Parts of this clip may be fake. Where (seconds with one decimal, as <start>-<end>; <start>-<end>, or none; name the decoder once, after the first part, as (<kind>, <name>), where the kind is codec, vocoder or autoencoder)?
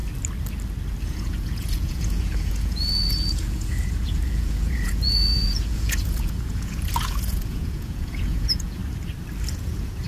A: 1.0-8.8 (vocoder, Vocos); 9.5-10.1